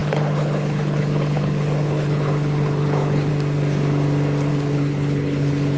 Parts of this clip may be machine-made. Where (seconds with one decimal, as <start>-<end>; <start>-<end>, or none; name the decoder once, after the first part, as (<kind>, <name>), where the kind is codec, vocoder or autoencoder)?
0.0-3.3 (codec, HILCodec); 4.5-5.8